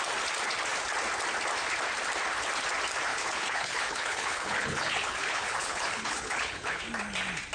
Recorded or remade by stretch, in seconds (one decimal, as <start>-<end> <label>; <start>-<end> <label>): 0.0-3.1 recorded; 3.1-6.8 remade; 6.8-7.5 recorded